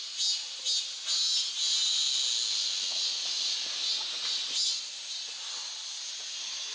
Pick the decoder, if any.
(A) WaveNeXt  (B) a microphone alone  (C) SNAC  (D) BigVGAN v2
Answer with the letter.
B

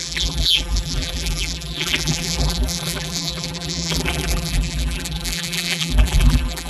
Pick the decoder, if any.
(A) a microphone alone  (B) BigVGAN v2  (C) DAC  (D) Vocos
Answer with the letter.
B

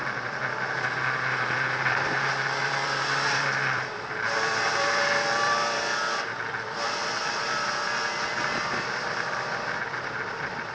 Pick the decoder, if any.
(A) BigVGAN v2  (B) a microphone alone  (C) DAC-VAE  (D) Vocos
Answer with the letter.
A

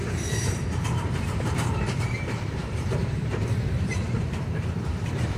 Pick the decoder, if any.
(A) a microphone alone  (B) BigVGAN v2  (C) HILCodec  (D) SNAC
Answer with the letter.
B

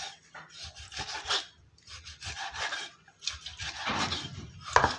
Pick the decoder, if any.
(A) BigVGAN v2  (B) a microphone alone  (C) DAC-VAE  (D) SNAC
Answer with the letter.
B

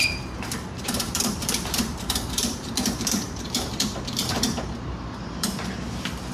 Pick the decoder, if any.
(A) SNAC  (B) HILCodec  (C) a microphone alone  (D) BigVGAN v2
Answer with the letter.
D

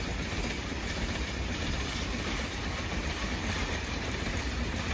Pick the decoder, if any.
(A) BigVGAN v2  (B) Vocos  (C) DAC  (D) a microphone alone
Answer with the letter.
A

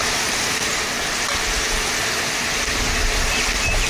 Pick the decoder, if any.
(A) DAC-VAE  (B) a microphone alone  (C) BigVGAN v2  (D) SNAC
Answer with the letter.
B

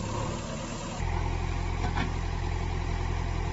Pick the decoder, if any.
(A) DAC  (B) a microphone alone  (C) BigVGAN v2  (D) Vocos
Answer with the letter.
B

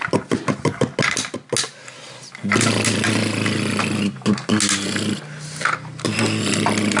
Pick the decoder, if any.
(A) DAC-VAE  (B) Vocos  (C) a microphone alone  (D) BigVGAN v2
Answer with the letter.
C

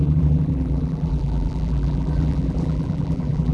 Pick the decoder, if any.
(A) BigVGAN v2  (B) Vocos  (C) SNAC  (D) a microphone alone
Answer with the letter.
A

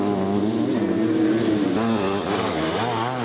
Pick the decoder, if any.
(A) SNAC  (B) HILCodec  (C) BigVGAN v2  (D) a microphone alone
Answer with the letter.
D